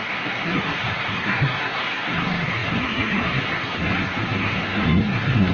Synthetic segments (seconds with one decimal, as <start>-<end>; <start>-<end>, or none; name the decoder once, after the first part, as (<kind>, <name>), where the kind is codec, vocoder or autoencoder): 0.0-5.5 (codec, SNAC)